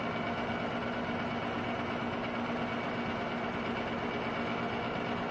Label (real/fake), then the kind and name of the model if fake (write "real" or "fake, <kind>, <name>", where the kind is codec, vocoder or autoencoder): real